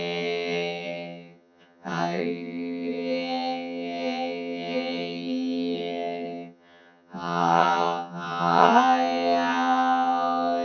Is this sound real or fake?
fake